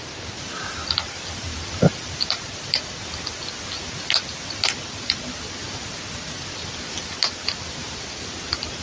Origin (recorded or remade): recorded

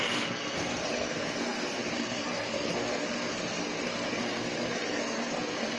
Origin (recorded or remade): remade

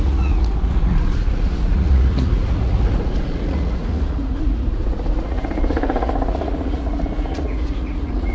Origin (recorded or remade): remade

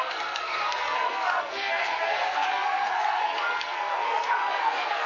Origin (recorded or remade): remade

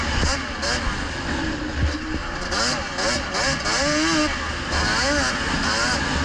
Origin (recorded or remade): recorded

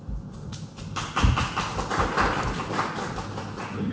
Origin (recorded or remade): recorded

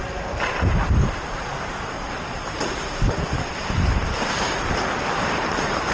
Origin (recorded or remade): remade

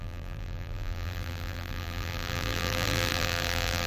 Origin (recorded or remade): remade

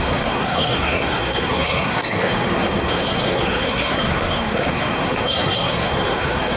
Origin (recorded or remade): remade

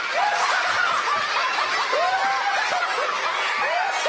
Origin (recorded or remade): recorded